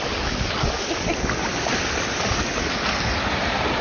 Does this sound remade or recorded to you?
recorded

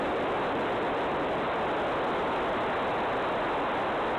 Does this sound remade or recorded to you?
recorded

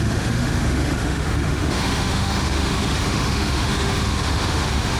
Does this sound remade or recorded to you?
remade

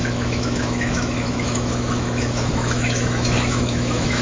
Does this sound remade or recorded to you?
remade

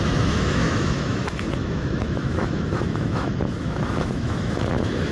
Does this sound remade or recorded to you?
remade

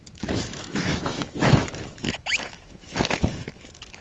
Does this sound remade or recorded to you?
remade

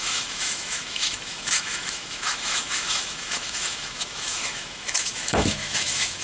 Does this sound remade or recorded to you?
remade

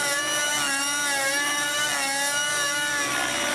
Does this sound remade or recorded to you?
recorded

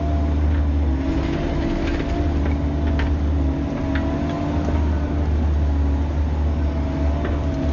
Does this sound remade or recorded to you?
recorded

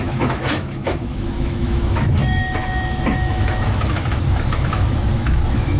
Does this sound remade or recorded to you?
remade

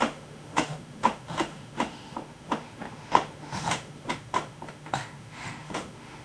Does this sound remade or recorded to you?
remade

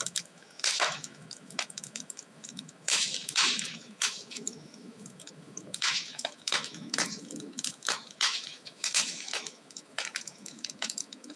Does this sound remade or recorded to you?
remade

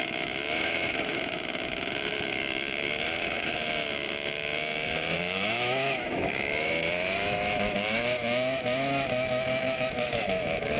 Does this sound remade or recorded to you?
remade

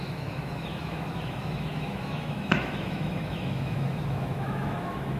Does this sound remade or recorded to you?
remade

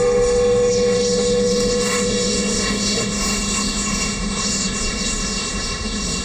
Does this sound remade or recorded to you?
remade